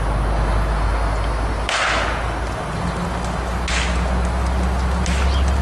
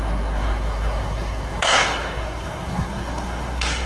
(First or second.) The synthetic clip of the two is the second